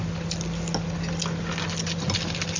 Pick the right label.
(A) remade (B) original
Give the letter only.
B